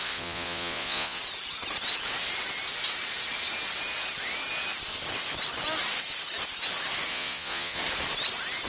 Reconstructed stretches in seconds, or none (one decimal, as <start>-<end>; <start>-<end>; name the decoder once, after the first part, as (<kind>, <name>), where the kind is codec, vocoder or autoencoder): 0.0-1.2 (vocoder, Vocos); 7.1-7.8